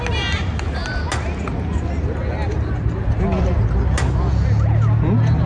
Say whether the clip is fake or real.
real